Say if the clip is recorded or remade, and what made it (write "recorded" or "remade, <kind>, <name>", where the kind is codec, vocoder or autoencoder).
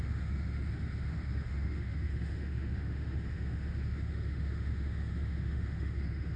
remade, autoencoder, DAC-VAE